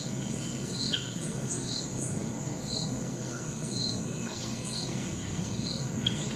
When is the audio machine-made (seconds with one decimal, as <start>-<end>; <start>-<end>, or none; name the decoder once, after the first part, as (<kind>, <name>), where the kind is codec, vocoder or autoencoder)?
0.0-6.4 (codec, SNAC)